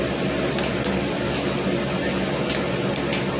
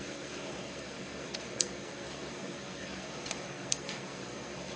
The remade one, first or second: second